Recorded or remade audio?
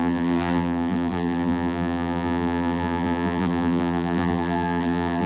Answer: remade